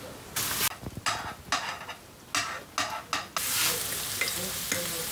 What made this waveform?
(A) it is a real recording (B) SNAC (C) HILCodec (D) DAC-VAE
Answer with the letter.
A